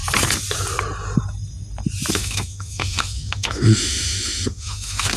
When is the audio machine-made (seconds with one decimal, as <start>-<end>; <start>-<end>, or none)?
2.1-5.2